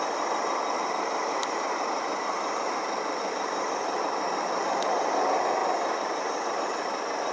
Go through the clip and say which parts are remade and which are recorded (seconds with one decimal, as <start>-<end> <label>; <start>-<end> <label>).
0.0-7.3 recorded